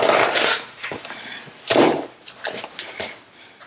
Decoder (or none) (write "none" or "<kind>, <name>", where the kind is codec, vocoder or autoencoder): none